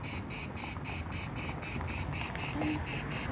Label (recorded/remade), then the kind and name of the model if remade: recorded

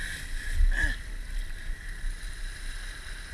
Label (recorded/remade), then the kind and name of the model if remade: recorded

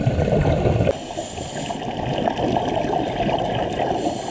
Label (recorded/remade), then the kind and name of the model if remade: recorded